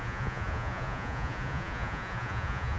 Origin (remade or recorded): remade